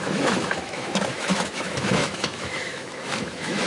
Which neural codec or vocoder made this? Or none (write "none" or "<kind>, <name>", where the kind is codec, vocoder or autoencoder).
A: autoencoder, DAC-VAE